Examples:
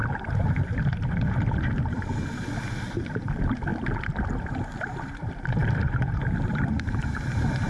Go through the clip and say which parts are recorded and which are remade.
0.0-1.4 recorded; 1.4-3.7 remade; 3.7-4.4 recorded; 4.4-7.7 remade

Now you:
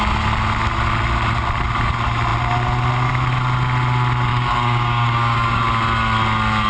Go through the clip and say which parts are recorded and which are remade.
0.0-4.3 recorded; 4.3-5.6 remade; 5.6-6.7 recorded

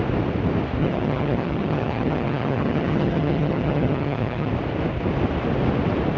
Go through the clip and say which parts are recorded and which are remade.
0.0-0.8 recorded; 0.8-4.5 remade; 4.5-6.2 recorded

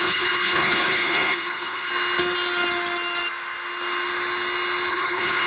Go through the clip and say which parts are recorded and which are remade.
0.0-1.9 remade; 1.9-4.9 recorded; 4.9-5.5 remade

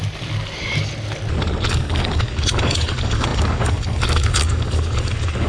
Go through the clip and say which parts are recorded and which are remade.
0.0-1.7 recorded; 1.7-5.5 remade

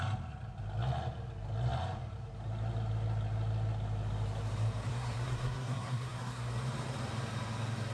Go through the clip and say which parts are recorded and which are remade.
0.0-4.9 recorded; 4.9-6.5 remade; 6.5-7.9 recorded

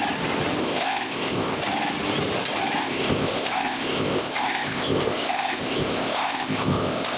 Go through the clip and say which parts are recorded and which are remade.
0.0-0.6 recorded; 0.6-1.6 remade; 1.6-2.8 recorded; 2.8-7.2 remade

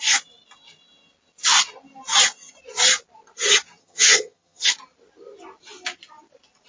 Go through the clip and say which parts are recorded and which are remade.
0.0-3.8 recorded; 3.8-4.6 remade; 4.6-6.7 recorded